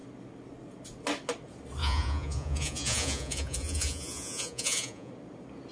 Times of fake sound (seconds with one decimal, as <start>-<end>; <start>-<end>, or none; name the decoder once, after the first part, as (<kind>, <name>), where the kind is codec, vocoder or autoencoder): 1.8-5.1 (vocoder, Vocos)